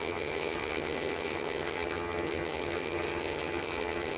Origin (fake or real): fake